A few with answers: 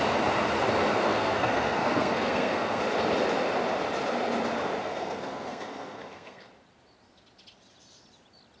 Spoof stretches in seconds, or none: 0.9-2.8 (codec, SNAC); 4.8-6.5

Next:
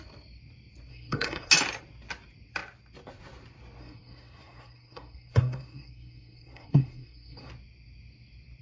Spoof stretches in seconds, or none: 0.9-1.5 (codec, SNAC); 3.8-7.5

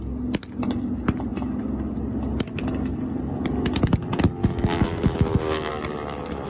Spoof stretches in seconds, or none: 4.4-5.7 (codec, DAC)

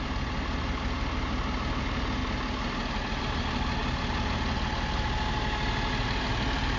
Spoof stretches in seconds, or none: none

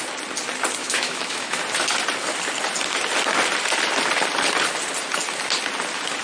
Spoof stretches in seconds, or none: 0.8-1.6 (autoencoder, DAC-VAE)